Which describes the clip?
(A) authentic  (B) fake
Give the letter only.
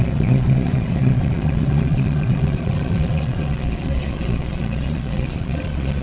B